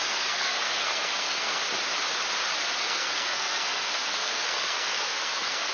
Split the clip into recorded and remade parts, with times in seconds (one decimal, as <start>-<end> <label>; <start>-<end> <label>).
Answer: 0.0-1.6 remade; 1.6-2.8 recorded; 2.8-5.7 remade